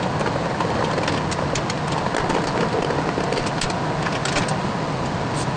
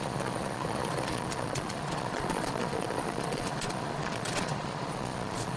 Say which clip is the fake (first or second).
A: second